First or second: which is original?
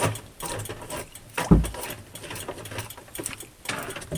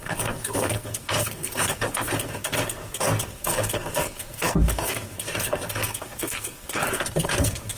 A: first